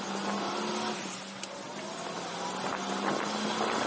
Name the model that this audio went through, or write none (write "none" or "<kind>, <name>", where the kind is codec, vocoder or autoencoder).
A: none